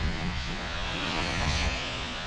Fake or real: fake